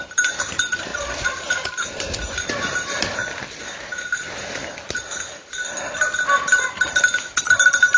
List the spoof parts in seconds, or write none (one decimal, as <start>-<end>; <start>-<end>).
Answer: 0.0-3.2; 7.4-8.0